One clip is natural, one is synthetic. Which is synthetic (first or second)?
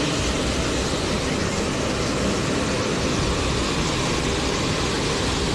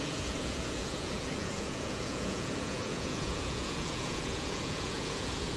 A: second